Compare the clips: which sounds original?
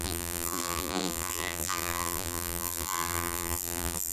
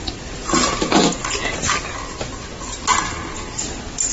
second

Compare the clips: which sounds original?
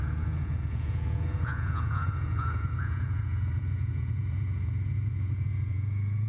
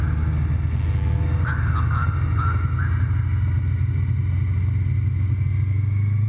second